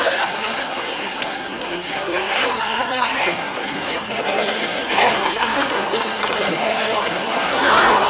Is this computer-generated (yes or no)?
yes